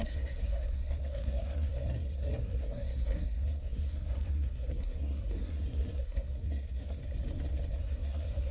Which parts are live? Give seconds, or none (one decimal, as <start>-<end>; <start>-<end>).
7.0-7.8